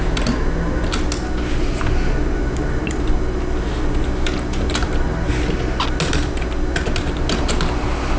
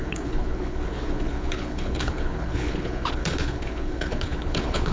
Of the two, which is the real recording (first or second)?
first